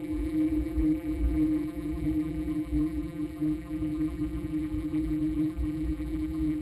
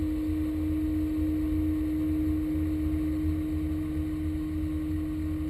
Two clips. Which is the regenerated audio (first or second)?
first